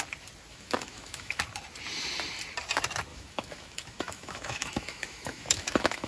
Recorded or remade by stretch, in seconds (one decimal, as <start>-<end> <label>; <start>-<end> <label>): 0.0-0.5 recorded; 0.5-1.4 remade; 1.4-3.1 recorded; 3.1-6.1 remade